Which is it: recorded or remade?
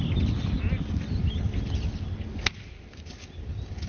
recorded